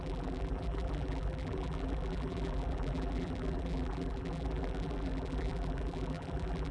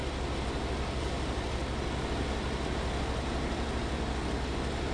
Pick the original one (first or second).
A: second